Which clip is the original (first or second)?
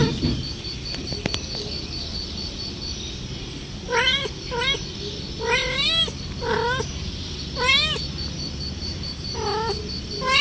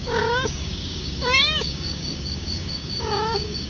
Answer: first